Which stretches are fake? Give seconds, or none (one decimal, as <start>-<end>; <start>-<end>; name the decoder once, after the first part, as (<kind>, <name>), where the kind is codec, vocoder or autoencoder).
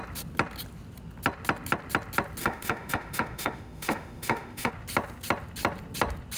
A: 2.4-4.7 (autoencoder, DAC-VAE)